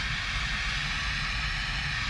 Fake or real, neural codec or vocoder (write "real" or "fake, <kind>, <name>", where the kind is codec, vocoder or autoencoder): real